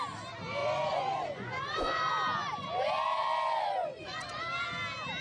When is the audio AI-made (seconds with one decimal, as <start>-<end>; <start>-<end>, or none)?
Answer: 0.6-2.1; 3.8-4.4